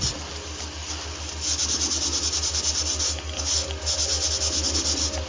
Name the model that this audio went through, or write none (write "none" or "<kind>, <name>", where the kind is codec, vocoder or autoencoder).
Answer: none